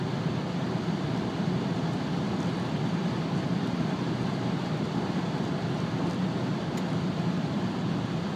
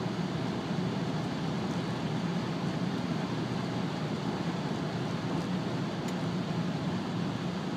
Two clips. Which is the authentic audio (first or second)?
second